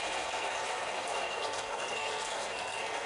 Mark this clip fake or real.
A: fake